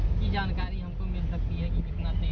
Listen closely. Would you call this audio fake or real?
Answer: real